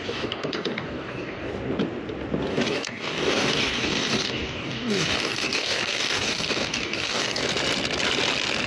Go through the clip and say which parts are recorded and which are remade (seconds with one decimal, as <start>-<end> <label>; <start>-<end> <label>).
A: 0.0-1.5 remade; 1.5-2.5 recorded; 2.5-7.4 remade; 7.4-8.7 recorded